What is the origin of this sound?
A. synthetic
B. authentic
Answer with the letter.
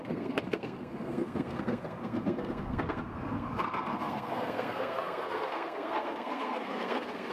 A